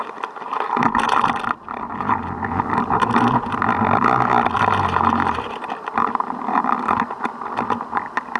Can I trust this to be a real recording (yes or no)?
yes